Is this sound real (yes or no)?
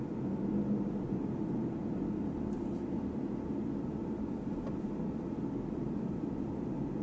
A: yes